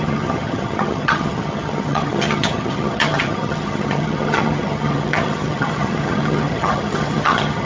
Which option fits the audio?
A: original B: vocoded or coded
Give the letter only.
B